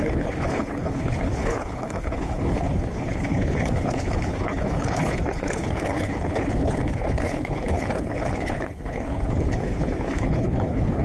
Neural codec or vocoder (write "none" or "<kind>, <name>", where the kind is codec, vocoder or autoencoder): codec, HILCodec